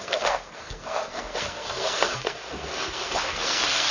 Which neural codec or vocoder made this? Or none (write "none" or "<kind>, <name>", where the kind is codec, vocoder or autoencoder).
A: codec, SNAC